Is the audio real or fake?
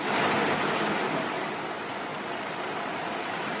real